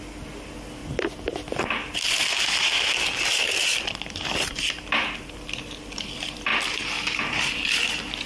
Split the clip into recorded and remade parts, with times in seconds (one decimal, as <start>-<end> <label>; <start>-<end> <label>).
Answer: 0.0-0.8 recorded; 0.8-1.6 remade; 1.6-3.7 recorded; 3.7-4.7 remade; 4.7-6.5 recorded; 6.5-7.5 remade; 7.5-8.3 recorded